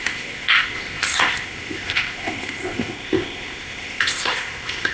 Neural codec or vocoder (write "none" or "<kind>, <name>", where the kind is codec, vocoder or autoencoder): codec, ZipCodec